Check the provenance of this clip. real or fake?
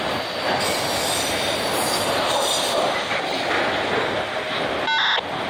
real